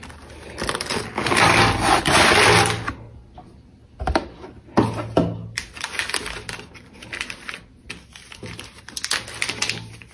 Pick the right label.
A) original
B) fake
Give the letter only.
A